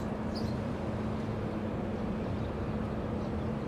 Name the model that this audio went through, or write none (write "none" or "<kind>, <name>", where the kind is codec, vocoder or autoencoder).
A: none